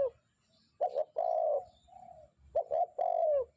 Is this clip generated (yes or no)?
no